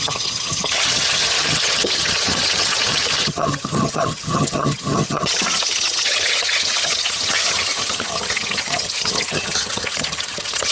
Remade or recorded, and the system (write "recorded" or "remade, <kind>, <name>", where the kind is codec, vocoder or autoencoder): remade, vocoder, HiFi-GAN